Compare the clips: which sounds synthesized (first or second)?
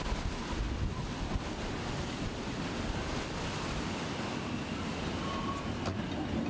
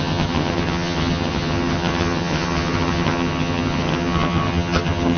second